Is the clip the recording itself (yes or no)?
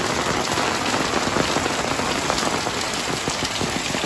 yes